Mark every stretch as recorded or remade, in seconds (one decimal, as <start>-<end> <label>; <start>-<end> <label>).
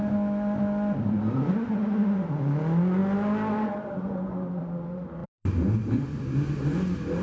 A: 0.0-5.2 recorded; 5.2-5.8 remade; 5.8-7.2 recorded